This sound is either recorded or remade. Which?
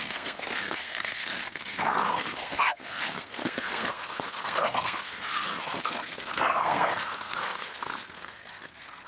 remade